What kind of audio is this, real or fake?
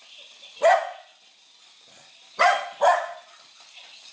real